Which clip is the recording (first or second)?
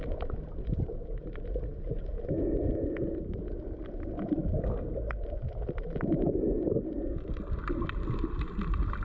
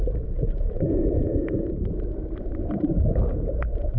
first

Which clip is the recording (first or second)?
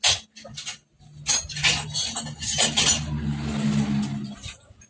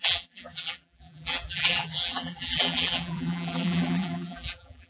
first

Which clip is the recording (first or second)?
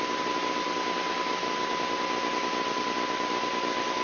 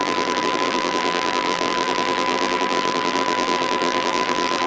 first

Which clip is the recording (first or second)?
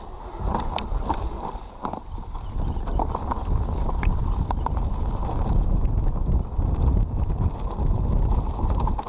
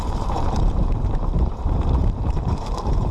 first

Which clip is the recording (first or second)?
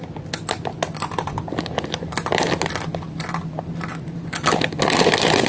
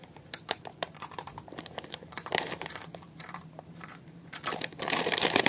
first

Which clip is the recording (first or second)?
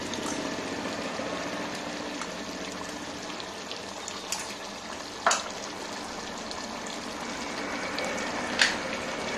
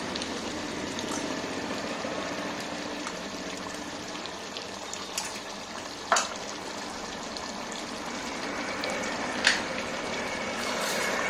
first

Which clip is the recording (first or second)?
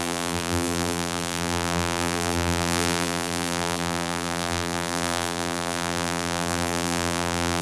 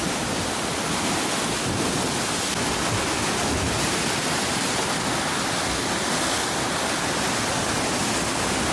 second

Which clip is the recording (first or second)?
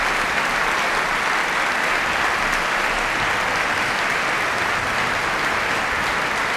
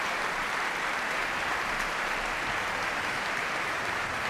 first